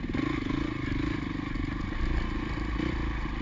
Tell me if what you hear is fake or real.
real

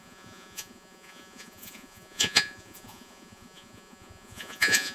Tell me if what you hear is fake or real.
fake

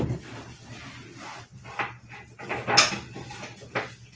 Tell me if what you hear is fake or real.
real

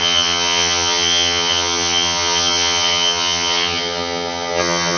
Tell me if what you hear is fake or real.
fake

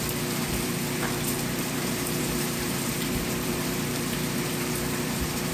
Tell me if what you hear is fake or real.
fake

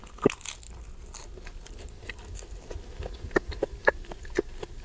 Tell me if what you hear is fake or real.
real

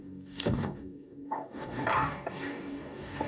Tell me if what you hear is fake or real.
fake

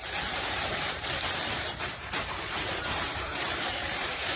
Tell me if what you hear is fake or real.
fake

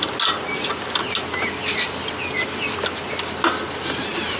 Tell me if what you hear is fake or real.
real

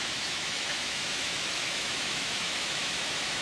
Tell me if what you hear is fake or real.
fake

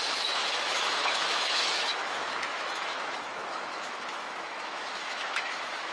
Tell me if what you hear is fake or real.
fake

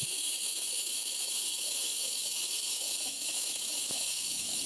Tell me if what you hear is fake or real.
fake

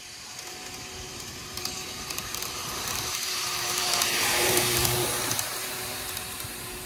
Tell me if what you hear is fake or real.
fake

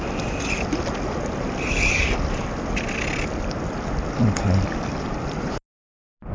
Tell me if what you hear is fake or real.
real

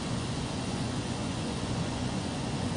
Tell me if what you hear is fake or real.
fake